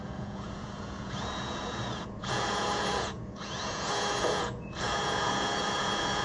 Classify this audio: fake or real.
fake